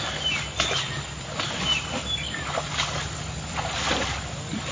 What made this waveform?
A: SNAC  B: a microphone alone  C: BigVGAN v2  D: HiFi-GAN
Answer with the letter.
B